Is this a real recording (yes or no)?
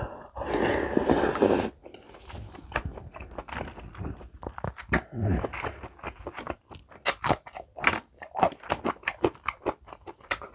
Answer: yes